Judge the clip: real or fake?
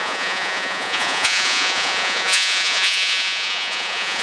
fake